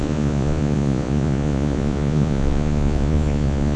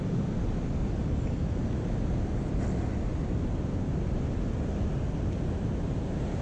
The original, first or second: second